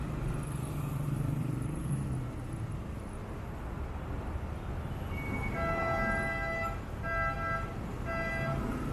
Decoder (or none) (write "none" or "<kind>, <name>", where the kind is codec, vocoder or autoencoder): none